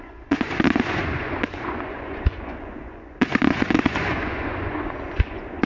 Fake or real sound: fake